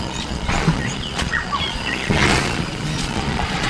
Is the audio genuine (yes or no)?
no